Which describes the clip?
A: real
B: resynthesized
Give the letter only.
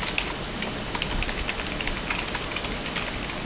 A